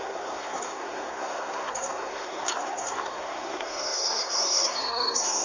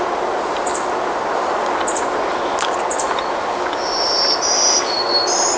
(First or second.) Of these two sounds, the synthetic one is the first